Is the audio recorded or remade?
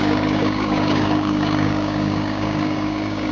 remade